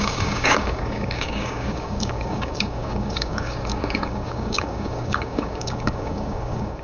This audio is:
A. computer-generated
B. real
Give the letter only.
A